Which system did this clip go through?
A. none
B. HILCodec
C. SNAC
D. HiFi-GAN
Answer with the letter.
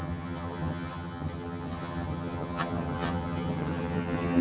D